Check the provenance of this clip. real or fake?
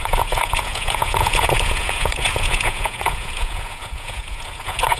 fake